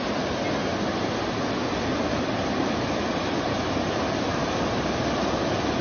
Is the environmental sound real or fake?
real